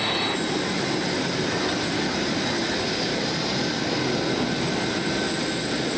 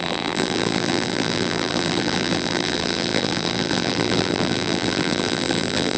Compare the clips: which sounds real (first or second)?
first